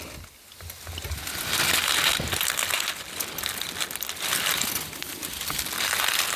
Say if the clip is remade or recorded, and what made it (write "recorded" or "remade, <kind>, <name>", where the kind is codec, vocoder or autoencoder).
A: recorded